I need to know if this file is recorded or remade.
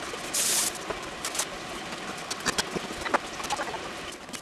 remade